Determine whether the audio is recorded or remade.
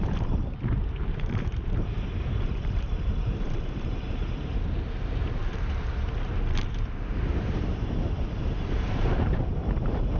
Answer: remade